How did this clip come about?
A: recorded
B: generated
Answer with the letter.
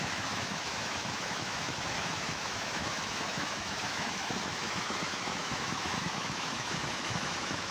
B